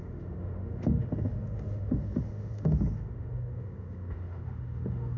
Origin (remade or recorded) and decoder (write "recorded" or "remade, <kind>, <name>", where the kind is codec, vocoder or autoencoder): remade, autoencoder, DAC-VAE